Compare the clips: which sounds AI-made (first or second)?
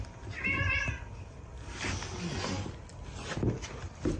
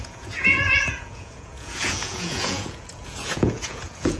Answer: second